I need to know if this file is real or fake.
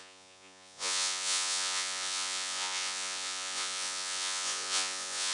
fake